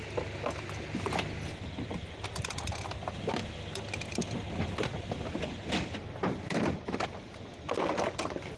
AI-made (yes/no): no